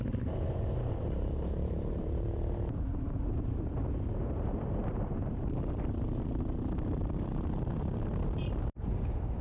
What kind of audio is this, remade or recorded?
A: remade